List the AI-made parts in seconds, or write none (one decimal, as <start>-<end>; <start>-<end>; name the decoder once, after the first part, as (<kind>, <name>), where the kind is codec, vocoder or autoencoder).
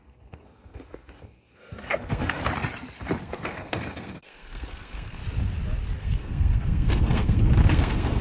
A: 0.0-2.4 (codec, SNAC); 3.2-5.2; 6.0-8.2